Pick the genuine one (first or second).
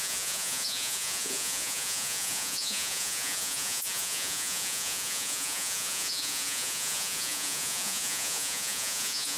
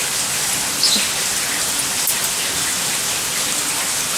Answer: second